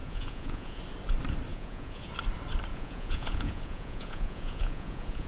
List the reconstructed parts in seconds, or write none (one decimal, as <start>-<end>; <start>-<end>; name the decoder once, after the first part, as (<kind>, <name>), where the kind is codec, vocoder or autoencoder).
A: 0.0-0.8 (vocoder, Vocos); 1.5-2.1; 2.7-5.3